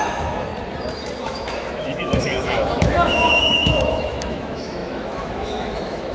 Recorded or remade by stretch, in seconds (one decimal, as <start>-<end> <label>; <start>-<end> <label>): 0.0-0.5 remade; 0.5-1.2 recorded; 1.2-6.1 remade